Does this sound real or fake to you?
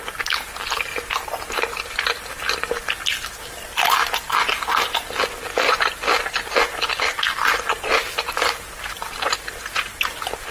real